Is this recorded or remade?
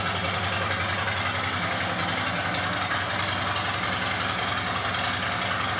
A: recorded